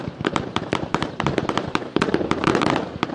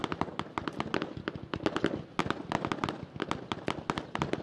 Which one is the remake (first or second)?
first